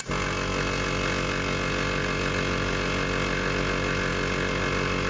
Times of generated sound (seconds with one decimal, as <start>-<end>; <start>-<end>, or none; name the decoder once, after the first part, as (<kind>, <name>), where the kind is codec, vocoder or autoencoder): none